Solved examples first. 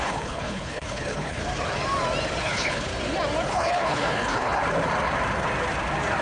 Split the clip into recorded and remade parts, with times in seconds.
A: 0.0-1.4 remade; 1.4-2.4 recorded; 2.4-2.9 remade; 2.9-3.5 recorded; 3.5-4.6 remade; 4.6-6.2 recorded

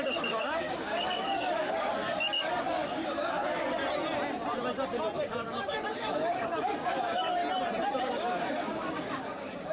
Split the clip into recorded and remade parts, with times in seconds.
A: 0.0-3.8 remade; 3.8-5.2 recorded; 5.2-7.4 remade; 7.4-8.0 recorded; 8.0-9.7 remade

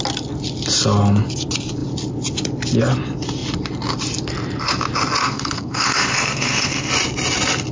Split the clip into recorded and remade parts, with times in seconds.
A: 0.0-5.2 recorded; 5.2-6.9 remade; 6.9-7.7 recorded

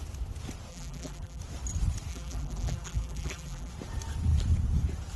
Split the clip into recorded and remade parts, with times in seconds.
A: 0.0-0.7 recorded; 0.7-1.4 remade; 1.4-2.1 recorded; 2.1-3.7 remade; 3.7-5.2 recorded

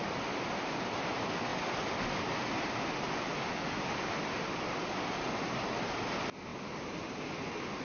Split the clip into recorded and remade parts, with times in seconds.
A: 0.0-7.8 recorded